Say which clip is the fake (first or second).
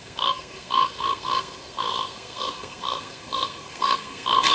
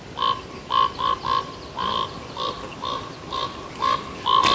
first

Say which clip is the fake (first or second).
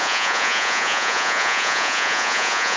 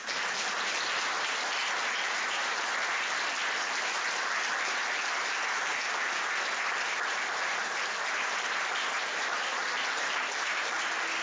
first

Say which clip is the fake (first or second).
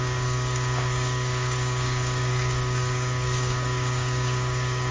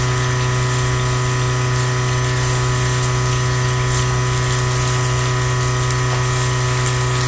first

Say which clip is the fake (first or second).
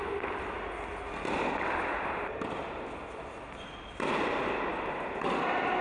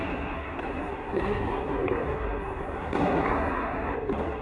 second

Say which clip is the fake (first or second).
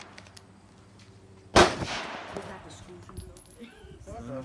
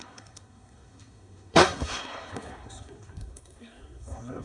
second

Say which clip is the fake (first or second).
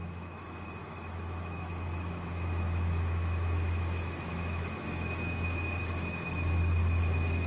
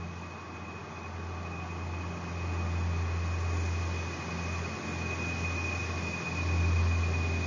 first